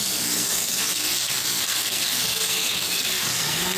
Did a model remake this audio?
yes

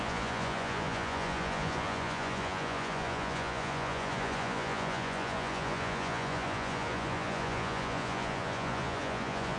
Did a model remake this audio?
yes